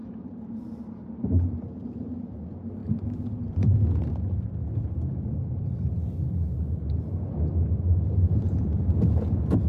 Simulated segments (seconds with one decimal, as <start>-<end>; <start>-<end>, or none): none